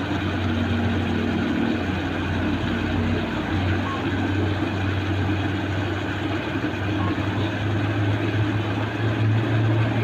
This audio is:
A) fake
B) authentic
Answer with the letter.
B